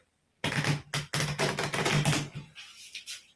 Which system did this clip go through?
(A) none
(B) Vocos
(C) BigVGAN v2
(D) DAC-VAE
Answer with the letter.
A